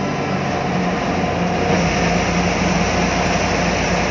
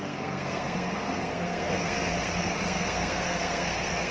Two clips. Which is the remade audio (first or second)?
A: second